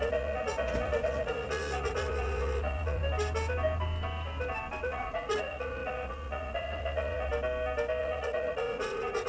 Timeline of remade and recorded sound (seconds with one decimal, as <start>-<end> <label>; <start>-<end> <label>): 0.0-3.0 remade; 3.0-4.8 recorded; 4.8-7.3 remade; 7.3-8.0 recorded; 8.0-9.3 remade